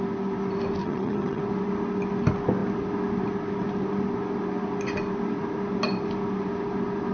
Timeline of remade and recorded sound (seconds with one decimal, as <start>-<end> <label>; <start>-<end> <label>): 0.0-0.8 recorded; 0.8-1.4 remade; 1.4-7.1 recorded